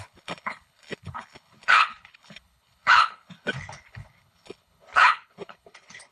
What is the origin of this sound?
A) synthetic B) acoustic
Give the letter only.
A